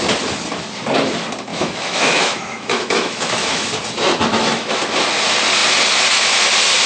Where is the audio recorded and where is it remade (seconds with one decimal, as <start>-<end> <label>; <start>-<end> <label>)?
0.0-1.5 recorded; 1.5-3.7 remade; 3.7-4.3 recorded; 4.3-4.8 remade; 4.8-6.9 recorded